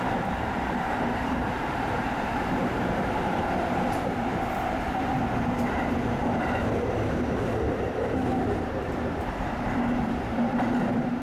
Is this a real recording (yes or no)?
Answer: no